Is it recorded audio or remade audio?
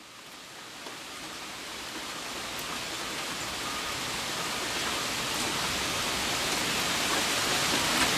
recorded